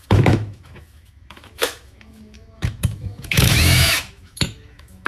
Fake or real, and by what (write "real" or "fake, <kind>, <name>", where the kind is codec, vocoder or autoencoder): fake, autoencoder, DAC-VAE